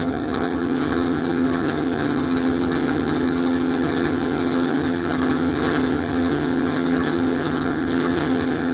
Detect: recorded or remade remade